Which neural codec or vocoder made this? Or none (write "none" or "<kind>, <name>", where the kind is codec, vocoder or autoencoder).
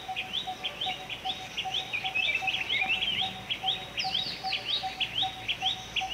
none